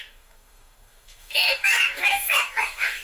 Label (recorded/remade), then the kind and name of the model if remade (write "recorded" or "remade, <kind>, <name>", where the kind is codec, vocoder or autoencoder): remade, codec, DAC